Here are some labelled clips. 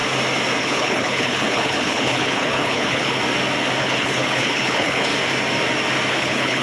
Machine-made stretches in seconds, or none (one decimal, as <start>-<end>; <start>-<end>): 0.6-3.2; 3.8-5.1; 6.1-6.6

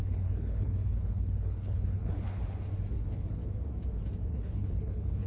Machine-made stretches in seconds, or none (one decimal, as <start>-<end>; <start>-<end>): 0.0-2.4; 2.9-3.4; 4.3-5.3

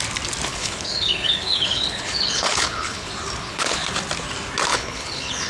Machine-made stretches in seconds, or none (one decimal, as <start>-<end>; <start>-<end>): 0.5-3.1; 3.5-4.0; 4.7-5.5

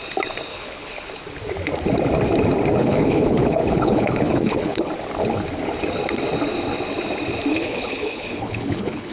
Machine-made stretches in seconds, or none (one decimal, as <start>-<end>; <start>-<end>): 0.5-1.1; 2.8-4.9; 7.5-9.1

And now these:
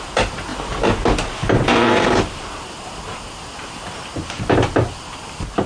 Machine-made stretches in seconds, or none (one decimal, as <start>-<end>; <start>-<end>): none

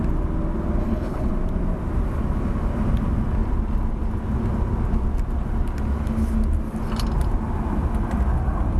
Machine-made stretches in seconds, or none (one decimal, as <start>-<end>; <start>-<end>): 0.8-1.3

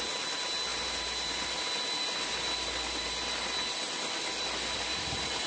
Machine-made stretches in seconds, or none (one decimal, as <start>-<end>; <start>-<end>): none